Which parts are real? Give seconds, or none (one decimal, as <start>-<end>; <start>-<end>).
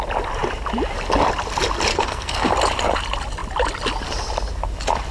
0.0-1.9; 2.5-5.1